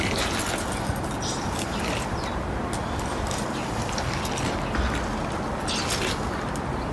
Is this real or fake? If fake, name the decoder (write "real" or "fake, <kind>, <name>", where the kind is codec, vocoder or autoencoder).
real